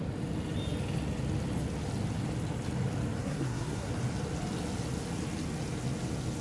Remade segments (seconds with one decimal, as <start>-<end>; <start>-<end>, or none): 3.2-3.9